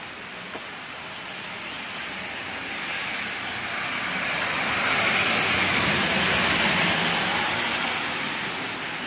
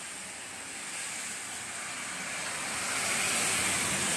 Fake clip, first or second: first